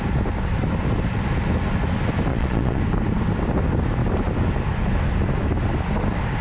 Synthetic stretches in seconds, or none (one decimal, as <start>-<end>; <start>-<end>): 2.3-2.8